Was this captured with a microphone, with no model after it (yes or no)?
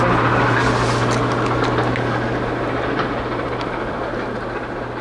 yes